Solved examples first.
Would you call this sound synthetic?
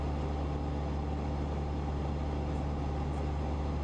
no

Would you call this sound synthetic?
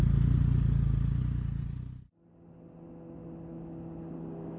no